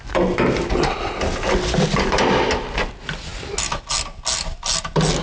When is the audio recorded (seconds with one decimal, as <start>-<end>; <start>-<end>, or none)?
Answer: 0.0-5.2